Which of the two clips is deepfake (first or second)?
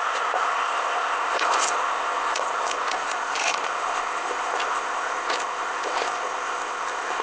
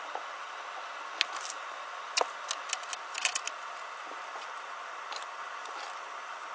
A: first